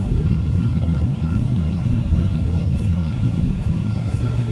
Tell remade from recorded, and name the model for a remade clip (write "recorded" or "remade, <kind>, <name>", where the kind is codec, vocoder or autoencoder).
remade, codec, SNAC